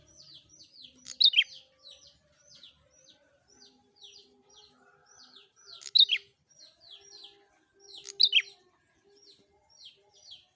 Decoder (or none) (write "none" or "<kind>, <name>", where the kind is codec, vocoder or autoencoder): none